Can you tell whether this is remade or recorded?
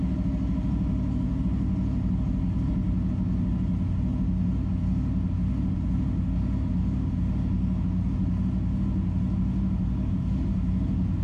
recorded